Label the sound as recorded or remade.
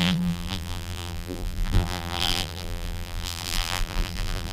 remade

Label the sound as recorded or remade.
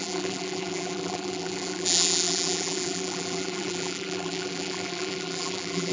remade